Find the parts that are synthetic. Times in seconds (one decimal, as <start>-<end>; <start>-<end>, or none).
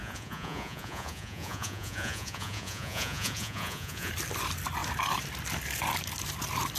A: 0.0-4.1